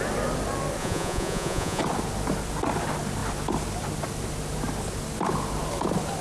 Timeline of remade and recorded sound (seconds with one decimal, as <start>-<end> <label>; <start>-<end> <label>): 0.0-0.8 recorded; 0.8-1.8 remade; 1.8-6.2 recorded